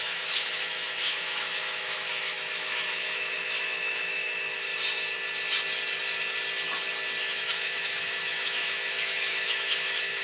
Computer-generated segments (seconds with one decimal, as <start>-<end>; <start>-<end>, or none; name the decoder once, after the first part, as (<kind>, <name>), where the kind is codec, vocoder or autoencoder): 0.0-4.7 (autoencoder, DAC-VAE); 7.2-10.2